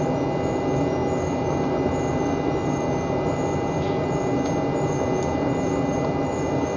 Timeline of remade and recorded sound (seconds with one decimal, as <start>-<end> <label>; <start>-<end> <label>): 0.0-6.8 recorded